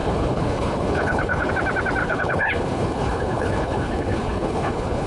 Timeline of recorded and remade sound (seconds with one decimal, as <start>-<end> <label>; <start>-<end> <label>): 0.0-1.5 remade; 1.5-2.0 recorded; 2.0-5.1 remade